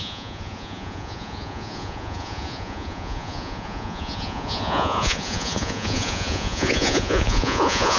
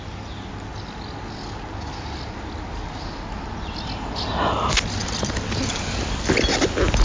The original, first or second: second